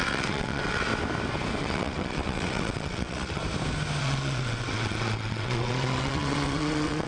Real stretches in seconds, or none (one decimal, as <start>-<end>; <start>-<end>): 0.9-1.6; 3.4-4.0